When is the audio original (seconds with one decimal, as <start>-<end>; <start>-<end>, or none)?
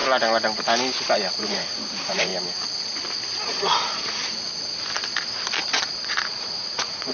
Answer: 0.0-1.4; 2.3-3.5; 4.2-6.0